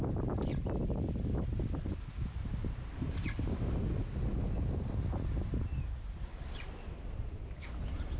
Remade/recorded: recorded